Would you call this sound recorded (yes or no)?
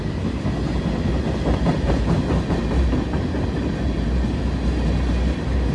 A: yes